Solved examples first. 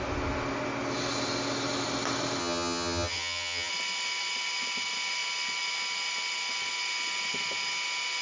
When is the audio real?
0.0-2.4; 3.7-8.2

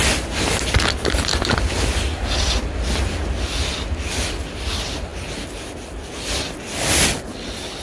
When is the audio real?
0.0-7.8

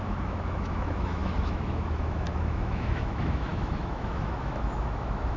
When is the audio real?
none

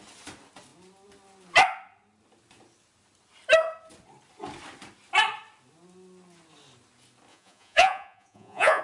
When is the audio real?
0.0-7.3